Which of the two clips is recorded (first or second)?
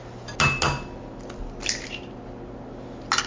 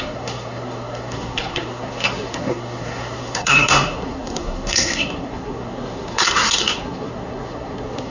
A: first